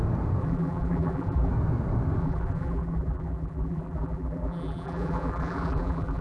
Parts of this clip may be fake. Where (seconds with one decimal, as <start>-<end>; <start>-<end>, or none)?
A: 0.4-1.5; 2.2-6.2